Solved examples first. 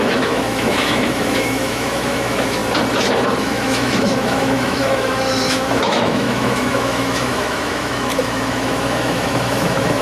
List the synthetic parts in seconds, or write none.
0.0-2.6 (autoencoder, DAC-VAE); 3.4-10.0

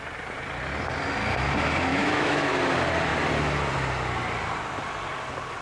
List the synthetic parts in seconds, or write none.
1.9-2.5 (autoencoder, DAC-VAE)

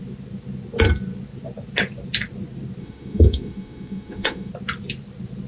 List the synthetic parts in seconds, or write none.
2.8-4.5 (autoencoder, DAC-VAE)

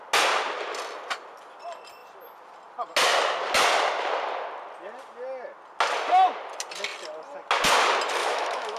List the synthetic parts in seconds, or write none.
8.2-8.8 (autoencoder, DAC-VAE)

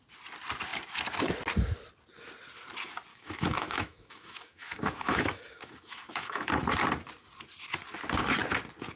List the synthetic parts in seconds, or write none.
3.1-6.5 (autoencoder, DAC-VAE)